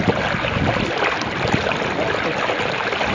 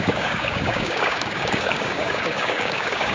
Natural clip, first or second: first